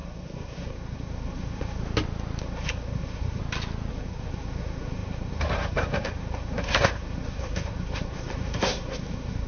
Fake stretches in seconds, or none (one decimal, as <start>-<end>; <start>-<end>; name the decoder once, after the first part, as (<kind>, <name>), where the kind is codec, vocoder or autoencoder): 0.0-1.8 (codec, SNAC); 2.4-3.4; 3.9-9.5